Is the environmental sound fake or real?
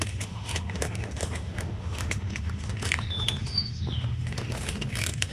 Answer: fake